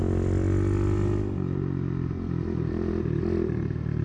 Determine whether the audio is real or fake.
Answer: real